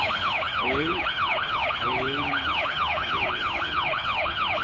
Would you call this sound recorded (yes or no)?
no